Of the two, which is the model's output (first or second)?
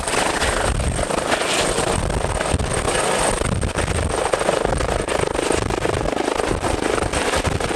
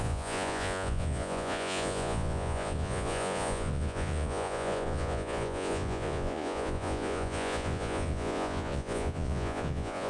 second